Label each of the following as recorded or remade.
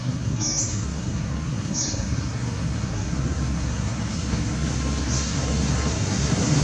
remade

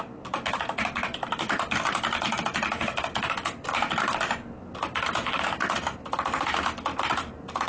recorded